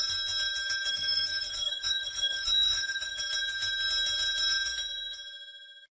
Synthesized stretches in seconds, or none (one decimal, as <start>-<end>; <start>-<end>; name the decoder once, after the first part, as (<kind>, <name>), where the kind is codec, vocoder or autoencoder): 0.9-3.2 (autoencoder, DAC-VAE)